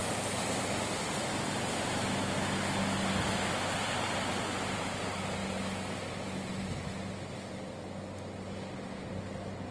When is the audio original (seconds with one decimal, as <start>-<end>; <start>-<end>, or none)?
0.0-9.7